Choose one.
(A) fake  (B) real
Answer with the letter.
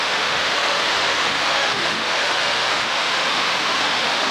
A